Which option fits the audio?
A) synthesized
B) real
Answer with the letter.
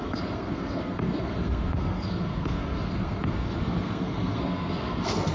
A